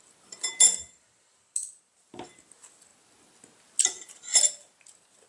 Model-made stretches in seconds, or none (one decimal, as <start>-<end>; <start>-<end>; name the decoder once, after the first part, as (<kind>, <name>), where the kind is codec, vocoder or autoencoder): none